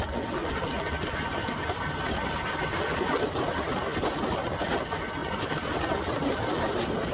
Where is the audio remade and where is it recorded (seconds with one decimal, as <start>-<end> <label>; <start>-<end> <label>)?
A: 0.0-7.1 recorded